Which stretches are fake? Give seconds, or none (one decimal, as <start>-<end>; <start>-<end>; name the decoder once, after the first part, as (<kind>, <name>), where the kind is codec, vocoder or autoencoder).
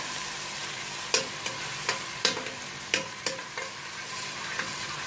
none